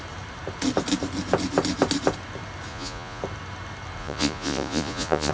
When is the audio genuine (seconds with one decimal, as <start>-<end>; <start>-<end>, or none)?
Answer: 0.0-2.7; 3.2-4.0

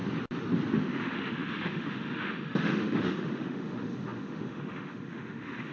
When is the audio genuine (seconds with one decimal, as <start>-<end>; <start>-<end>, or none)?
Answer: 0.0-0.8

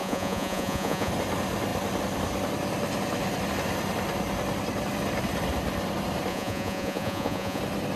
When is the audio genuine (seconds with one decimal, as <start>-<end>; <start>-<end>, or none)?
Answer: 1.1-6.3; 7.6-8.0

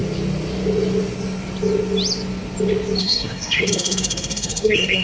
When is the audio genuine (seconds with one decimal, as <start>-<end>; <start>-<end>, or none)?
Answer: 0.0-3.0

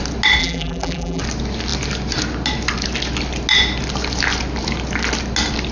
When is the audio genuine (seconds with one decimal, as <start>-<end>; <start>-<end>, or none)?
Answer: 0.0-0.4; 1.2-5.7